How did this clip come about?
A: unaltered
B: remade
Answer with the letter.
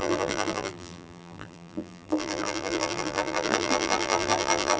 B